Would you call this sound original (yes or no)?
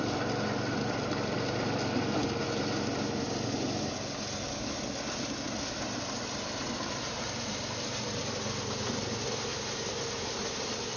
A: yes